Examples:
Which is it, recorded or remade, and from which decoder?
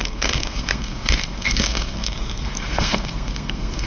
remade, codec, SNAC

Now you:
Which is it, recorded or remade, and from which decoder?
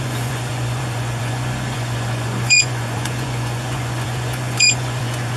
remade, vocoder, Vocos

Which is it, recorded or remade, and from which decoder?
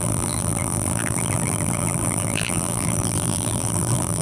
remade, vocoder, BigVGAN v2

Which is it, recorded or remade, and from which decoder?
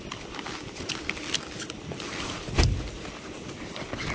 recorded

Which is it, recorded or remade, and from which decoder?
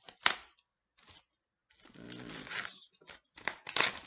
recorded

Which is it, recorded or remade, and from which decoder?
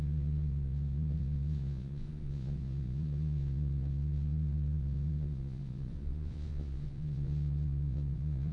remade, vocoder, Vocos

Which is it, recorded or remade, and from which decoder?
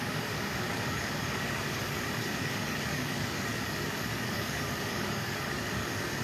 remade, codec, DAC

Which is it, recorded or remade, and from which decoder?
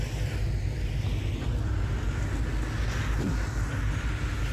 recorded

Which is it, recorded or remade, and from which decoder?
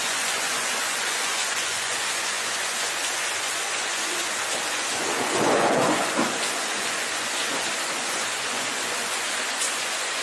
remade, vocoder, Vocos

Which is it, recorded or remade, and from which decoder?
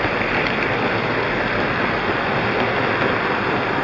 recorded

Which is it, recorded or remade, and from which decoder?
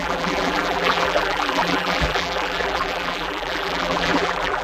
remade, vocoder, BigVGAN v2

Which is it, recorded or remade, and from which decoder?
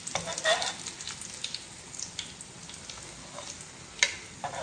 recorded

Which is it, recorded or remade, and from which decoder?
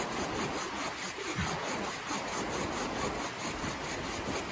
recorded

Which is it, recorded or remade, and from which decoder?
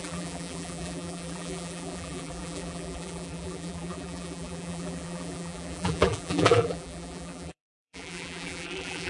remade, vocoder, BigVGAN v2